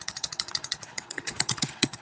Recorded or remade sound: remade